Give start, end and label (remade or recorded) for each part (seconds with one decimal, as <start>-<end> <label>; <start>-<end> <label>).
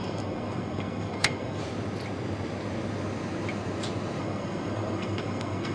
0.0-1.6 remade; 1.6-4.2 recorded; 4.2-5.7 remade